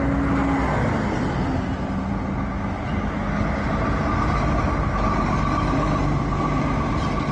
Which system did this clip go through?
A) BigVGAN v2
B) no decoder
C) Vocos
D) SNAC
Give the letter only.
B